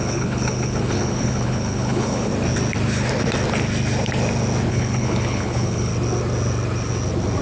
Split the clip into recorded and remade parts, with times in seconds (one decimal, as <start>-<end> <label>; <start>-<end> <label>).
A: 0.0-2.3 remade; 2.3-4.7 recorded; 4.7-5.9 remade; 5.9-7.4 recorded